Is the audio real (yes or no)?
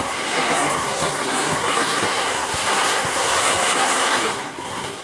no